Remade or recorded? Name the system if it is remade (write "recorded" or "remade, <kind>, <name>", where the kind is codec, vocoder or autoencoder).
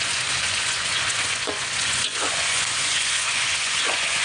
remade, vocoder, Vocos